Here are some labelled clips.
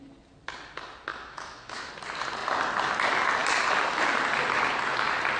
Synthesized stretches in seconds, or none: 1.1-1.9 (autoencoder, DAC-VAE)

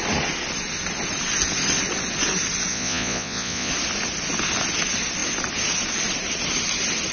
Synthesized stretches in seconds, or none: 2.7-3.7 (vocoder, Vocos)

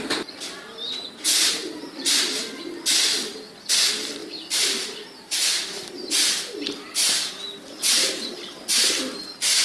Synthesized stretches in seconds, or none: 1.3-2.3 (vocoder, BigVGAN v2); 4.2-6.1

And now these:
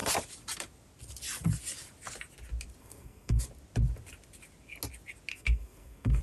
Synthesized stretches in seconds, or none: 2.8-3.4 (codec, SNAC); 5.3-6.2

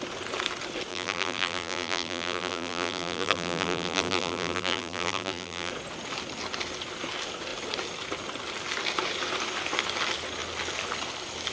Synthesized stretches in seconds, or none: 0.9-5.7 (vocoder, BigVGAN v2)

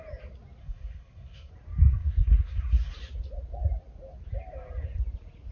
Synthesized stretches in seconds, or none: 0.6-1.5 (codec, SNAC); 1.9-2.9

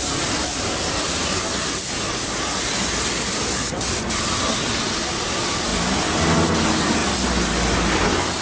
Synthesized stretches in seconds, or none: none